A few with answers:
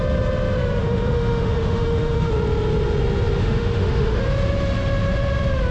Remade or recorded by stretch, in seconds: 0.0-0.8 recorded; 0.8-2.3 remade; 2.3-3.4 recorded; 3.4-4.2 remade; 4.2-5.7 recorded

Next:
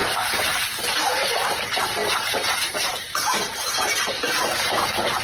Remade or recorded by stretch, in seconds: 0.0-0.9 recorded; 0.9-5.2 remade

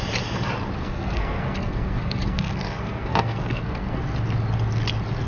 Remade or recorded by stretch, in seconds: 0.0-0.8 recorded; 0.8-4.0 remade; 4.0-5.3 recorded

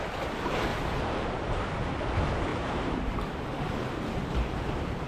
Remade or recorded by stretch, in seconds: 0.0-0.7 recorded; 0.7-1.3 remade; 1.3-2.5 recorded; 2.5-5.1 remade

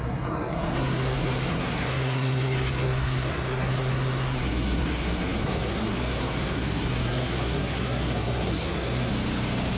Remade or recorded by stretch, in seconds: 0.0-9.1 remade; 9.1-9.8 recorded